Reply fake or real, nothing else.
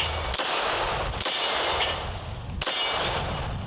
real